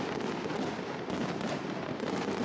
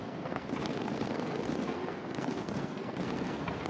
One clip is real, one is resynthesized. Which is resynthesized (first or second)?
second